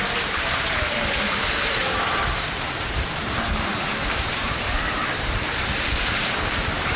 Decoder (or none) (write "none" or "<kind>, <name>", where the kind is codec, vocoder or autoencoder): vocoder, BigVGAN v2